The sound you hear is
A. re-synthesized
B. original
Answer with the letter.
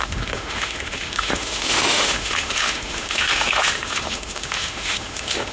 A